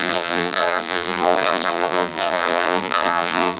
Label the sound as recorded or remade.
remade